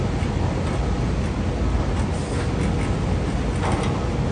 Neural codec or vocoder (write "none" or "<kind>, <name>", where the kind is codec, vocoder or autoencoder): none